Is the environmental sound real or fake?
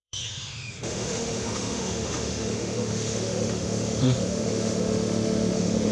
fake